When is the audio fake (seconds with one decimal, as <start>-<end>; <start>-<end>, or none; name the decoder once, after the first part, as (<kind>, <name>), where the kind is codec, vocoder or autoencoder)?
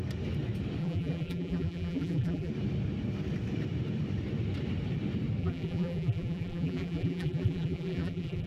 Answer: 0.8-2.5 (vocoder, BigVGAN v2); 5.4-8.5